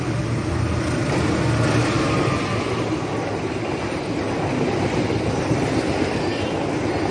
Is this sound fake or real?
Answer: real